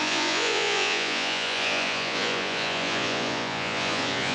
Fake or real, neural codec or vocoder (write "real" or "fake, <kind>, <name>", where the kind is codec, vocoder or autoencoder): fake, vocoder, Vocos